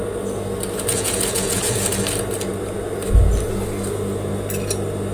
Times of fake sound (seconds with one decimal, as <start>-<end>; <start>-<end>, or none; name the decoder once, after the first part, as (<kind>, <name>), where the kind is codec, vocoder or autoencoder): 0.9-1.9 (vocoder, Vocos)